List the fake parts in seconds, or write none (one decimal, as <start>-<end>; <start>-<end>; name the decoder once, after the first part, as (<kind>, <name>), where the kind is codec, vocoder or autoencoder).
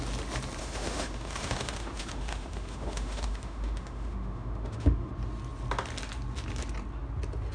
0.6-5.1 (autoencoder, DAC-VAE)